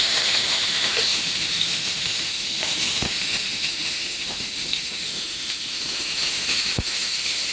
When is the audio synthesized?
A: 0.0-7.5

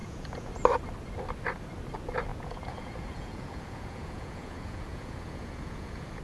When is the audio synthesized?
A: 0.0-0.5; 2.3-6.2

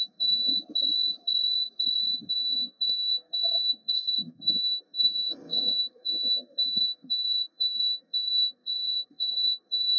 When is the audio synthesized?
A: 0.0-0.5; 2.3-10.0

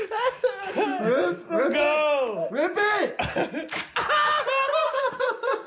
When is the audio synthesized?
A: 4.8-5.7

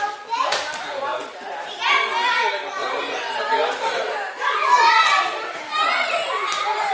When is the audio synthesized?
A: none